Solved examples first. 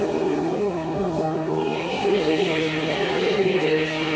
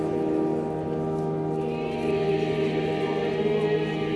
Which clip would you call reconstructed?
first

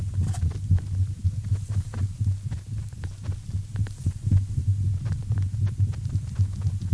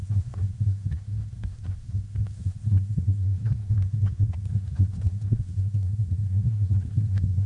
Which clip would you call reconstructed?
second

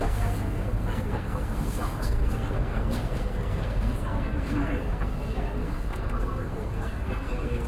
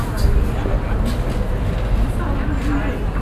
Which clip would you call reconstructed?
first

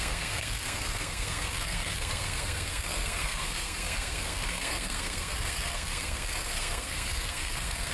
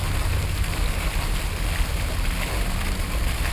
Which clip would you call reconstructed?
first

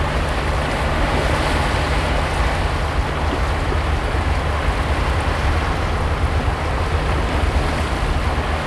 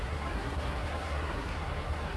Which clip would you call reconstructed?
second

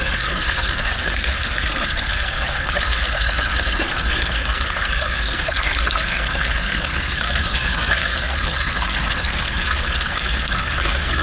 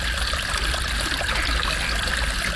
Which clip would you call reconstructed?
first